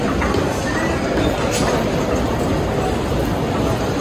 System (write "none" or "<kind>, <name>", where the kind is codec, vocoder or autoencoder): none